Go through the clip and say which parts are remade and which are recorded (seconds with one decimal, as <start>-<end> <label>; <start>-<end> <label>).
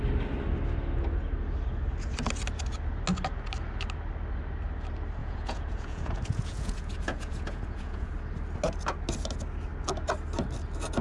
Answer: 0.0-5.2 recorded; 5.2-8.1 remade; 8.1-11.0 recorded